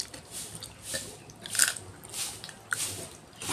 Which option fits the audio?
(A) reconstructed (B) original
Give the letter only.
B